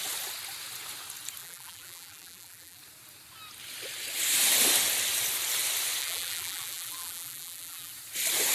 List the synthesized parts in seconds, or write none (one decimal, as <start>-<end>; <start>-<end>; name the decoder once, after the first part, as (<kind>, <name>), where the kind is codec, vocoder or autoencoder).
1.4-2.8 (vocoder, BigVGAN v2); 6.0-7.9